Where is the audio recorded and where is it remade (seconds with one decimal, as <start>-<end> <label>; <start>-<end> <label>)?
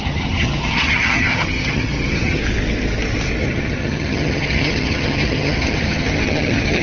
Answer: 0.0-2.4 remade; 2.4-3.4 recorded; 3.4-6.8 remade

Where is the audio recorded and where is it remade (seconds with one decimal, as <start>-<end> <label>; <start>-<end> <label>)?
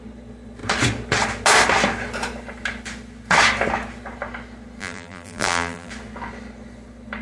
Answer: 0.0-4.8 recorded; 4.8-5.9 remade; 5.9-7.2 recorded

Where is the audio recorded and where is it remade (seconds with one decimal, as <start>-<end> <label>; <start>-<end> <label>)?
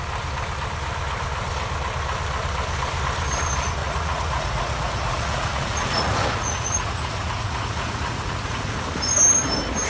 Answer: 0.0-3.8 recorded; 3.8-8.8 remade; 8.8-9.9 recorded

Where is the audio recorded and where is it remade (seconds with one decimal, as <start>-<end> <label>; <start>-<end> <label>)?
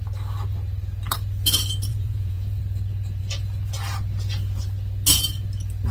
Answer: 0.0-1.9 recorded; 1.9-2.6 remade; 2.6-5.9 recorded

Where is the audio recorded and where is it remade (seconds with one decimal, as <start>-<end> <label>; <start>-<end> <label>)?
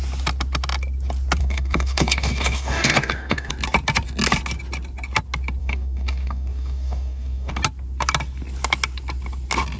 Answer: 0.0-1.4 recorded; 1.4-3.5 remade; 3.5-5.6 recorded; 5.6-7.5 remade; 7.5-9.8 recorded